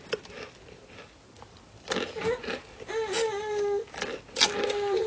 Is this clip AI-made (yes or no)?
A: no